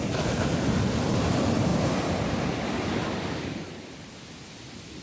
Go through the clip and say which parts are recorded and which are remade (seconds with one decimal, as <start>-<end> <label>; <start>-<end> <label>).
0.0-5.0 recorded